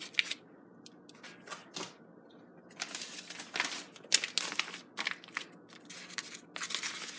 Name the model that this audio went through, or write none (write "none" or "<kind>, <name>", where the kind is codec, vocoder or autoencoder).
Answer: none